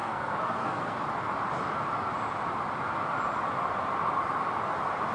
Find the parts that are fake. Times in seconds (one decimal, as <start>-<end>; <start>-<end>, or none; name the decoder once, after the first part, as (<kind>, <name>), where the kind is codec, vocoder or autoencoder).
0.0-1.0 (codec, SNAC)